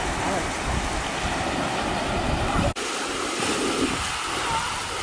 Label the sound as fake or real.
real